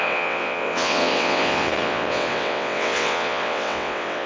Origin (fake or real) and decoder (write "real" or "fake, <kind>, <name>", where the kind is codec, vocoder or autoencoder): fake, vocoder, WaveNeXt